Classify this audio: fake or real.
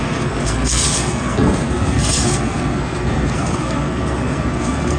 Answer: fake